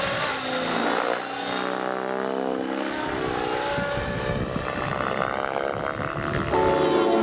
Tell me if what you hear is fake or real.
real